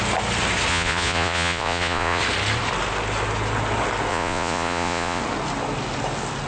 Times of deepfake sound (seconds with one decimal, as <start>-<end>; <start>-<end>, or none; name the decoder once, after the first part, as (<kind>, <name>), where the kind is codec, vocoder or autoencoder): 0.7-2.2 (vocoder, Vocos); 4.1-5.2